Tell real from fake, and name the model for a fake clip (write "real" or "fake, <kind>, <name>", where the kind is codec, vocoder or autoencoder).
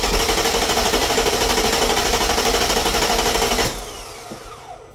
real